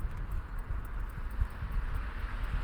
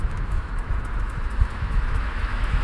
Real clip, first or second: first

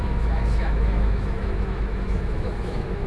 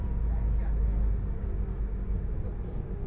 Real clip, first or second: second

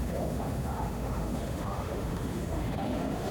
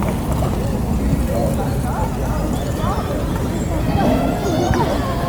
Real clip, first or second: second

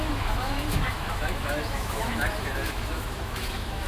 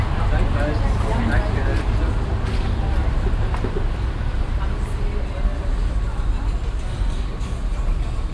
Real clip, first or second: second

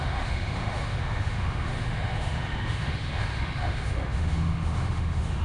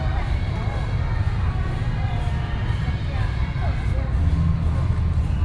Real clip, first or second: second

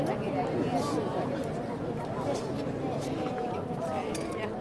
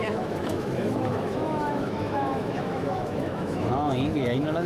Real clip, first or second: first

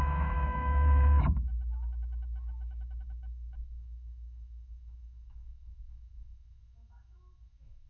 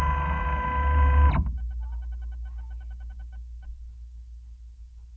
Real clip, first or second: second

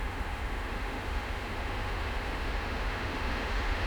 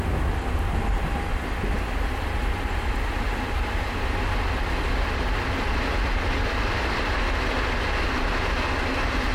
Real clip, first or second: second